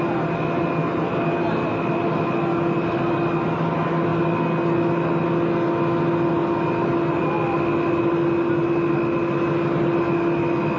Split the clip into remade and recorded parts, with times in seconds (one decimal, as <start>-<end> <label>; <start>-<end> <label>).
0.0-10.8 recorded